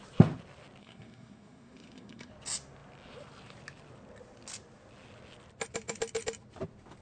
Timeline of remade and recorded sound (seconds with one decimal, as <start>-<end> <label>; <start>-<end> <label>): 0.0-0.8 recorded; 0.8-2.3 remade; 2.3-7.0 recorded